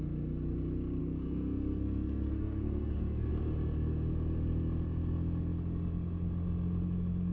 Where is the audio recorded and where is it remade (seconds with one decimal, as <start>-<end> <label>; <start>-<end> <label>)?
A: 0.0-1.0 recorded; 1.0-3.3 remade; 3.3-7.3 recorded